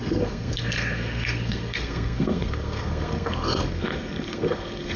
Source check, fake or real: fake